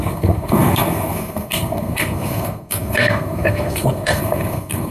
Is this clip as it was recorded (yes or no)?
no